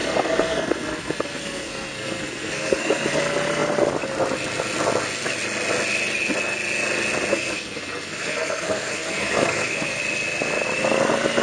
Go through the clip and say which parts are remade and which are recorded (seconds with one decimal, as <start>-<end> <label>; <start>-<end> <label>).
0.0-3.2 remade; 3.2-7.3 recorded; 7.3-10.0 remade; 10.0-11.4 recorded